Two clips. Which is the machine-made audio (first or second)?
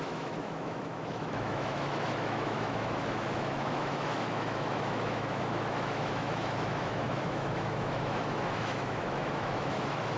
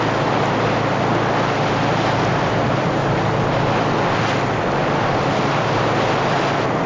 first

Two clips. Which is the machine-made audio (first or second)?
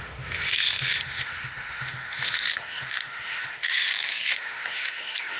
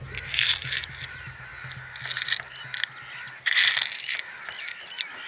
first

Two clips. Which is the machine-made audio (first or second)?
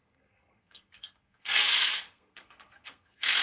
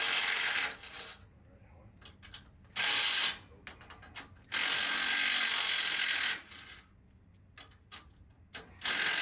first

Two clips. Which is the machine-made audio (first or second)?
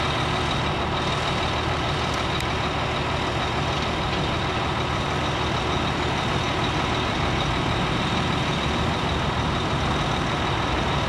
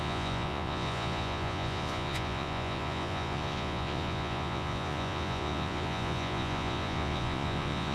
second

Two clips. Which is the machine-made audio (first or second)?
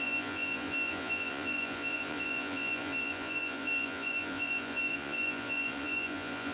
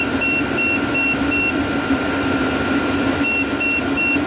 first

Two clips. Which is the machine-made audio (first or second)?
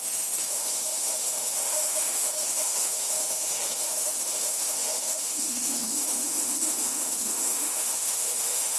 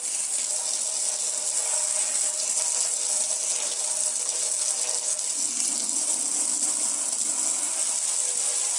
first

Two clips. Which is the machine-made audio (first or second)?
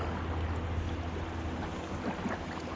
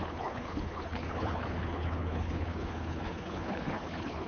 second